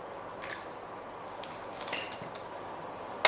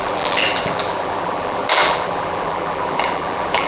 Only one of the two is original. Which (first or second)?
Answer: first